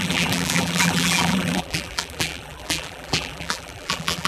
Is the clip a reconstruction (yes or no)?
yes